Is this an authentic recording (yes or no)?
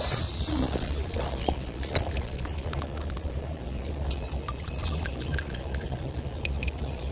no